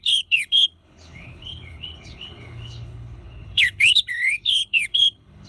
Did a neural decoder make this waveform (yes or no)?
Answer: yes